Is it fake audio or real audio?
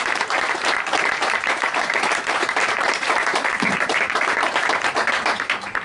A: fake